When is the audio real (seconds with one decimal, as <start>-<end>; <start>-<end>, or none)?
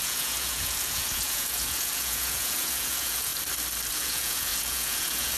3.3-3.9